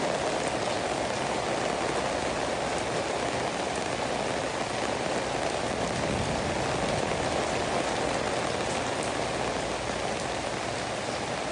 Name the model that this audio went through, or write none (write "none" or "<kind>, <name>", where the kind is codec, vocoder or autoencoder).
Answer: none